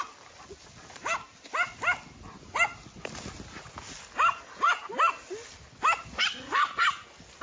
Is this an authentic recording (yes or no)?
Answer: yes